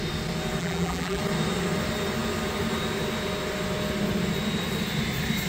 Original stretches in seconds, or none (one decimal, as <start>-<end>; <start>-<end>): 0.0-0.6; 1.2-5.5